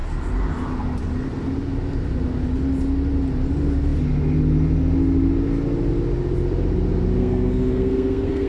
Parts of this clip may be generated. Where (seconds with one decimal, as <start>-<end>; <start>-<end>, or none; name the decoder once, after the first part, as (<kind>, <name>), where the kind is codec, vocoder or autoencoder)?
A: 7.2-8.5 (codec, SNAC)